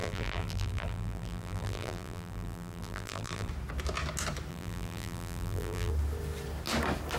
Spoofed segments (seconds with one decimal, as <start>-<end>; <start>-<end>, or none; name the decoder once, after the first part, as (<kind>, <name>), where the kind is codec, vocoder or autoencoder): 0.0-3.5 (vocoder, BigVGAN v2); 4.5-5.9